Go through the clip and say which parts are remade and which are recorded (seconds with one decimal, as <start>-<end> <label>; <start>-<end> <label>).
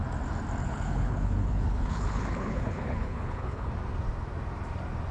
0.0-0.6 recorded; 0.6-3.7 remade; 3.7-5.1 recorded